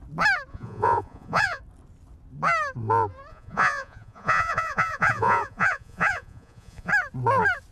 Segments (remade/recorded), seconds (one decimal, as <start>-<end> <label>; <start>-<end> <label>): 0.0-0.5 recorded; 0.5-1.6 remade; 1.6-3.3 recorded; 3.3-6.9 remade; 6.9-7.7 recorded

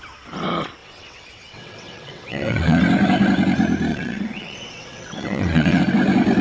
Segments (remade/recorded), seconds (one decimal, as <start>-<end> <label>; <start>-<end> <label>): 0.0-0.8 recorded; 0.8-2.8 remade; 2.8-3.9 recorded; 3.9-5.8 remade; 5.8-6.4 recorded

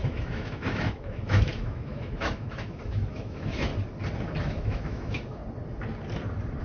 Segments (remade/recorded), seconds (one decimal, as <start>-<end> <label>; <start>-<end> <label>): 0.0-3.7 remade; 3.7-4.4 recorded; 4.4-5.4 remade; 5.4-6.6 recorded

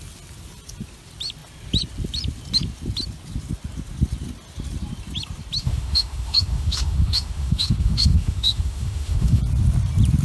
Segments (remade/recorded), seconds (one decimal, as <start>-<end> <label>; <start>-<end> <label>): 0.0-5.6 recorded; 5.6-9.4 remade; 9.4-10.2 recorded

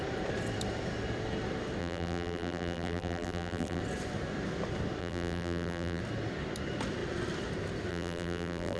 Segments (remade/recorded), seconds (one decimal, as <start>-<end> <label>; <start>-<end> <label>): 0.0-1.8 recorded; 1.8-3.8 remade; 3.8-5.0 recorded; 5.0-6.0 remade; 6.0-7.9 recorded; 7.9-8.8 remade

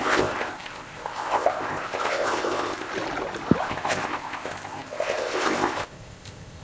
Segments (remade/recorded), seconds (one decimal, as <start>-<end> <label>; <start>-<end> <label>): 0.0-2.9 remade; 2.9-3.6 recorded; 3.6-6.6 remade

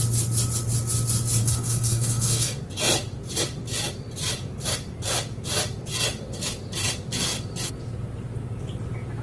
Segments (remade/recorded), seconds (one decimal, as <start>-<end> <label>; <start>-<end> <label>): 0.0-1.4 recorded; 1.4-2.6 remade; 2.6-9.2 recorded

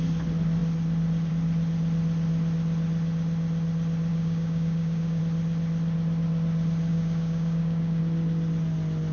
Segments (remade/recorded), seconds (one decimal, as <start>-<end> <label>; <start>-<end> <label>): 0.0-4.1 recorded; 4.1-5.2 remade; 5.2-6.9 recorded; 6.9-8.0 remade; 8.0-9.1 recorded